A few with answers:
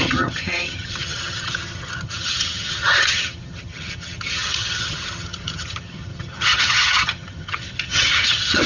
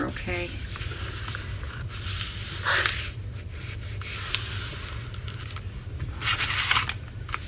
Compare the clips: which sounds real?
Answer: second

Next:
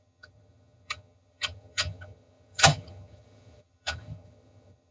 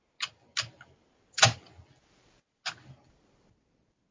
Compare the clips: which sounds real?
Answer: second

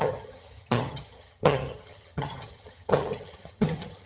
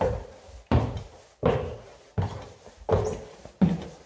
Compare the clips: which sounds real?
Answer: second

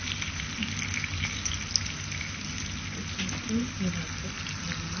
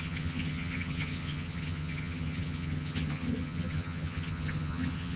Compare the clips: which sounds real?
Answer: first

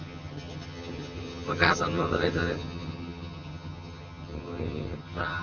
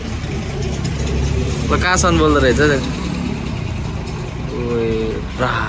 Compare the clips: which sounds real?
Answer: second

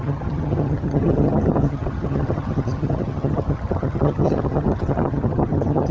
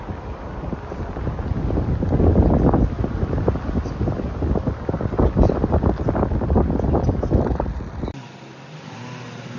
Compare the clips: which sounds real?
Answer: second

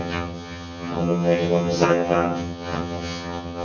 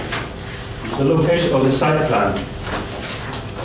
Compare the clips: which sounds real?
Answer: second